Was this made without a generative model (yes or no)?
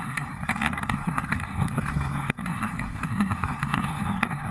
no